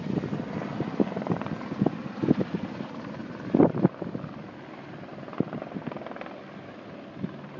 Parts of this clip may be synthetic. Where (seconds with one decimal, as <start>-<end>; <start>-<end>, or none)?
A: none